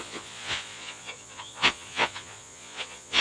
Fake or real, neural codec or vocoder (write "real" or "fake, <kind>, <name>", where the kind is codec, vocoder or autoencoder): fake, vocoder, Vocos